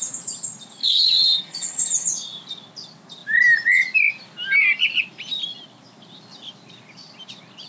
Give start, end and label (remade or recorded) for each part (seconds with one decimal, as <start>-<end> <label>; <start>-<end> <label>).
0.0-0.8 recorded; 0.8-2.1 remade; 2.1-7.7 recorded

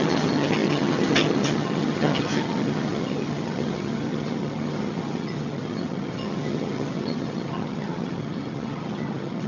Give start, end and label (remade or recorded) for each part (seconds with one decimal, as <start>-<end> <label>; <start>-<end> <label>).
0.0-9.5 remade

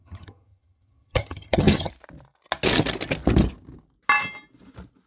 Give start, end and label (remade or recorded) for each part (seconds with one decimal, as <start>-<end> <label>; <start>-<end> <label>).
0.0-1.9 remade; 1.9-5.1 recorded

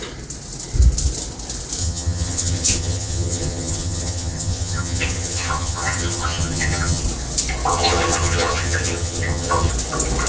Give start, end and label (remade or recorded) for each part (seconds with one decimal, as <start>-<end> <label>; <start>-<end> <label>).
0.0-1.8 recorded; 1.8-7.0 remade; 7.0-7.7 recorded; 7.7-9.7 remade; 9.7-10.3 recorded